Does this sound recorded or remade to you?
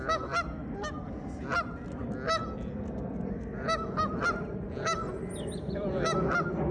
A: recorded